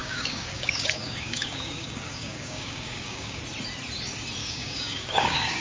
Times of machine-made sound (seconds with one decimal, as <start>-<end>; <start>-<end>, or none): 0.0-3.4; 4.4-5.6